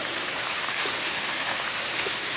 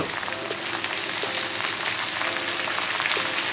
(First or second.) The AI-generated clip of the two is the first